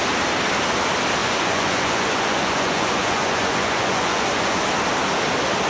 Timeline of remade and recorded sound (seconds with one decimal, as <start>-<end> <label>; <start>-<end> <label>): 0.0-1.2 recorded; 1.2-4.6 remade; 4.6-5.7 recorded